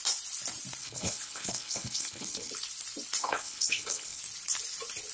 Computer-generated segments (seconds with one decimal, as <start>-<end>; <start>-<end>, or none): 0.8-2.5; 3.2-4.2